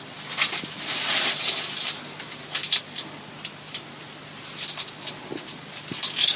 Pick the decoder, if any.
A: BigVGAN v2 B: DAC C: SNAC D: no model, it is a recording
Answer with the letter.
D